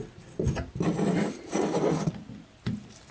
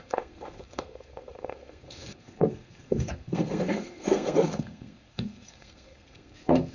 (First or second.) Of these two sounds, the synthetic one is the second